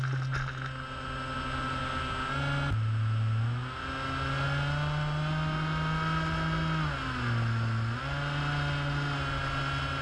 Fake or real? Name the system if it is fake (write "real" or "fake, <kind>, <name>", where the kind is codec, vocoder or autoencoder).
real